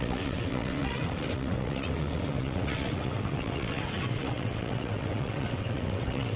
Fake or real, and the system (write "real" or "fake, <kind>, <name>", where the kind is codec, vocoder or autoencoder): fake, vocoder, WaveNeXt